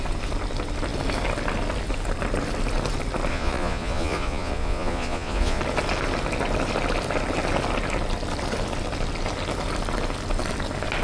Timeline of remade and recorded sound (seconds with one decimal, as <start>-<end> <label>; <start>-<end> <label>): 0.0-3.3 recorded; 3.3-5.6 remade; 5.6-11.0 recorded